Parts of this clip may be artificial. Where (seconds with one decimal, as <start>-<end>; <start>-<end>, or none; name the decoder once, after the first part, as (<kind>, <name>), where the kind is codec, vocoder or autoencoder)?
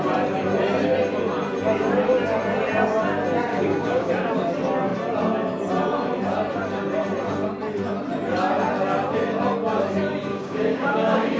3.5-4.1 (codec, DAC); 10.3-11.4